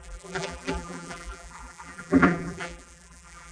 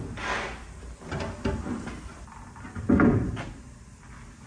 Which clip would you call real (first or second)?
second